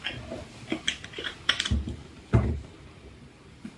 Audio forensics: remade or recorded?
recorded